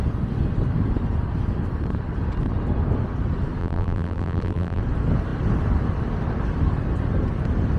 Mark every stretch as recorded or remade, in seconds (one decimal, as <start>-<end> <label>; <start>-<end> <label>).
0.0-3.6 recorded; 3.6-4.8 remade; 4.8-7.8 recorded

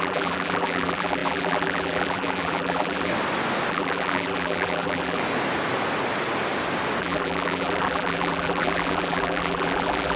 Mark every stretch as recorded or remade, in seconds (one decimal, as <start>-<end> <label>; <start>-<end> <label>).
0.0-3.1 remade; 3.1-3.7 recorded; 3.7-5.2 remade; 5.2-7.0 recorded; 7.0-10.2 remade

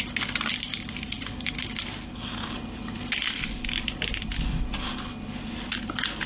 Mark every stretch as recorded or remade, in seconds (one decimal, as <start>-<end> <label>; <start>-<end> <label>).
0.0-0.7 recorded; 0.7-1.6 remade; 1.6-6.3 recorded

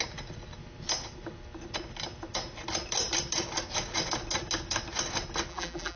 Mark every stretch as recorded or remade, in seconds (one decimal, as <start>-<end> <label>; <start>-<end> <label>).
0.0-5.5 recorded; 5.5-6.0 remade

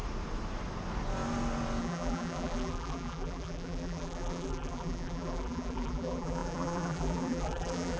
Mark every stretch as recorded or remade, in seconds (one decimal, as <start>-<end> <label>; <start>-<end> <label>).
0.0-1.8 recorded; 1.8-8.0 remade

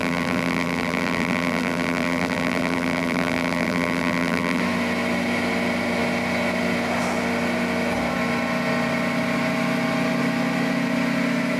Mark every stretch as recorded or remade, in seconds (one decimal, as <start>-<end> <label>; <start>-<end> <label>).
0.0-4.6 remade; 4.6-11.6 recorded

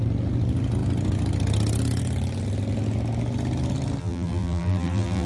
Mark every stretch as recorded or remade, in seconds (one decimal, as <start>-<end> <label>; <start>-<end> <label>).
0.0-4.0 recorded; 4.0-5.3 remade

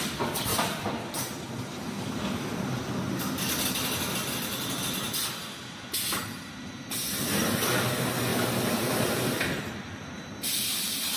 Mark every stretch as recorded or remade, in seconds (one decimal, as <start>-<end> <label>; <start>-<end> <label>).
0.0-0.5 recorded; 0.5-1.2 remade; 1.2-1.7 recorded; 1.7-2.8 remade; 2.8-8.3 recorded; 8.3-10.2 remade; 10.2-11.2 recorded